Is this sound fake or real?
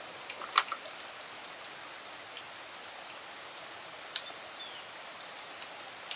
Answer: real